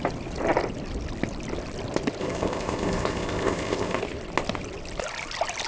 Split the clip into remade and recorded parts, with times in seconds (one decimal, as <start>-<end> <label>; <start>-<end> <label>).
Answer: 0.0-2.2 recorded; 2.2-4.0 remade; 4.0-5.7 recorded